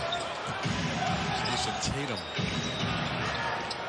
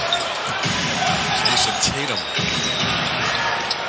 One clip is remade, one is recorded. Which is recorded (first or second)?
first